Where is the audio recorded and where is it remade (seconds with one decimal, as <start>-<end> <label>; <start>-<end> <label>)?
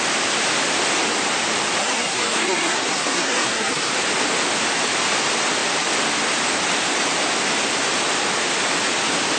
0.0-1.8 recorded; 1.8-3.9 remade; 3.9-9.4 recorded